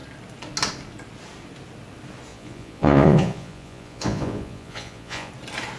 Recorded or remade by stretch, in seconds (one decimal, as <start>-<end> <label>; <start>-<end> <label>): 0.0-2.3 recorded; 2.3-5.3 remade; 5.3-5.8 recorded